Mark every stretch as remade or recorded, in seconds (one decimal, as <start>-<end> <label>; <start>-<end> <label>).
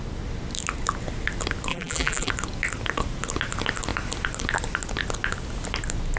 0.0-1.7 recorded; 1.7-2.3 remade; 2.3-6.2 recorded